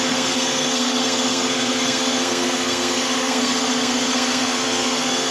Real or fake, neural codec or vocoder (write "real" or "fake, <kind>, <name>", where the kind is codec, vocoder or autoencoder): fake, codec, SNAC